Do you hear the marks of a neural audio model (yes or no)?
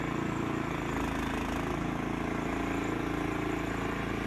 no